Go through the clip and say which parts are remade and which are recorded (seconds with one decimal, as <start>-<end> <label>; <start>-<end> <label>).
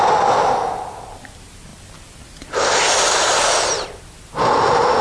0.0-5.0 recorded